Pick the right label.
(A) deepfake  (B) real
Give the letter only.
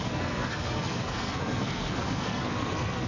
A